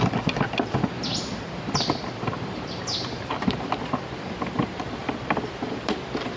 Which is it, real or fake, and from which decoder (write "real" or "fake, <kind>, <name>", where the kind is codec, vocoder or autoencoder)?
fake, vocoder, BigVGAN v2